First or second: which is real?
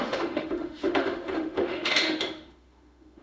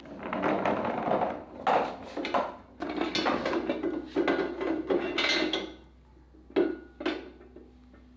second